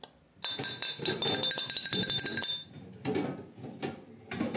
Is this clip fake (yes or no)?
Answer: no